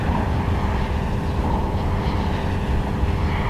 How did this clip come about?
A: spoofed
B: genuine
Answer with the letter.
B